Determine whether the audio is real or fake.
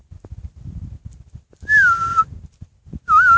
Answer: real